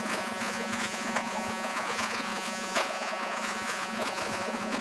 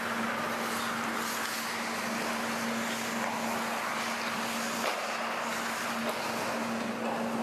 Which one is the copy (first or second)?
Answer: first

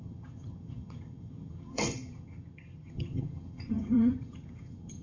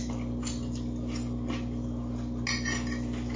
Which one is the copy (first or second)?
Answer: first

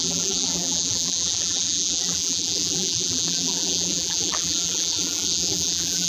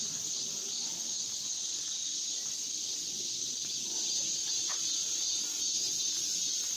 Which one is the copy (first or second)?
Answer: first